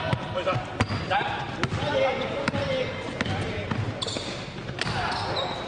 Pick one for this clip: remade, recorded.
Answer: recorded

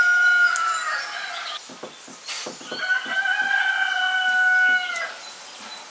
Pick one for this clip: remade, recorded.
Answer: recorded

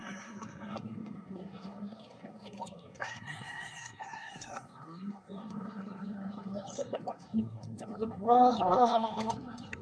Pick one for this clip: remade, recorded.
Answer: remade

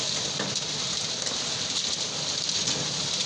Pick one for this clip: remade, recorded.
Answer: recorded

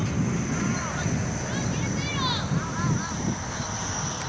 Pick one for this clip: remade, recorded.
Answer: recorded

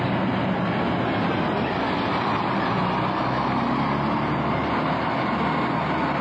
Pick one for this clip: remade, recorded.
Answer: recorded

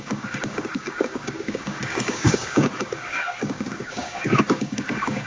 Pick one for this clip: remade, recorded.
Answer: remade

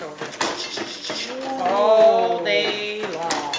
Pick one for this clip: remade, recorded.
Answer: recorded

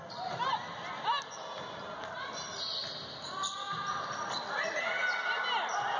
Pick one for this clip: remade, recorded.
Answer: recorded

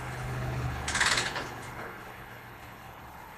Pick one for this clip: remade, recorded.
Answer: remade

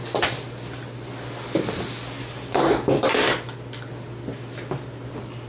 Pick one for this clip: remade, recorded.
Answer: recorded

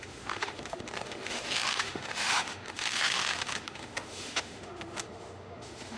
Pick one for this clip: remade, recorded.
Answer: remade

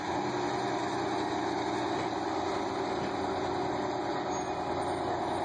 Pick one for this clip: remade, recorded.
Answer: recorded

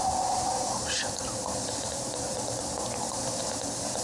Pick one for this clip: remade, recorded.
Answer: recorded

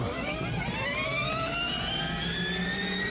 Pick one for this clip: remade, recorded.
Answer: recorded